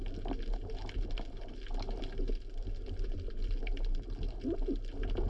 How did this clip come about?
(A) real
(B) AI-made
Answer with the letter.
A